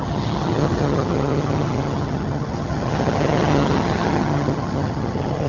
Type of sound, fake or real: fake